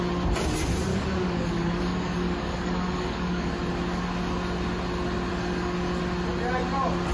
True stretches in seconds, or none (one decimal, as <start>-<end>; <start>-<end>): 0.0-0.9; 3.5-5.3; 6.0-7.1